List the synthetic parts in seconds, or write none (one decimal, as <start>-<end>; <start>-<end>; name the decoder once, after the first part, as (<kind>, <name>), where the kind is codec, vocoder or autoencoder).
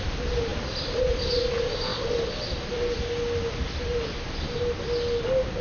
none